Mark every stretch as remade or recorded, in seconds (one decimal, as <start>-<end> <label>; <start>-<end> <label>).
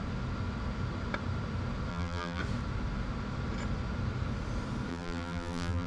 0.0-1.9 recorded; 1.9-2.4 remade; 2.4-4.9 recorded; 4.9-5.9 remade